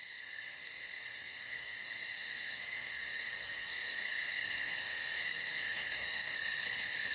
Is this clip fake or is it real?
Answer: fake